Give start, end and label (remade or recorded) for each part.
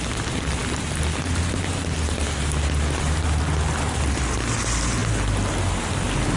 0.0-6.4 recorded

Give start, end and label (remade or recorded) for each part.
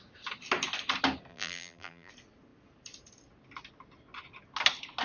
0.0-1.3 recorded; 1.3-2.1 remade; 2.1-5.0 recorded